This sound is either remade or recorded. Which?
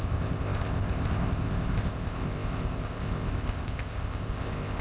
remade